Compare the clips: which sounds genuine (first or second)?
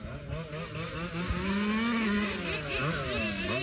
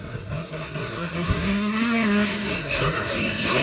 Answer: first